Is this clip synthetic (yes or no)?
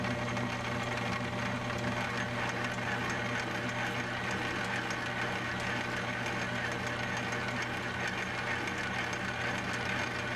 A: no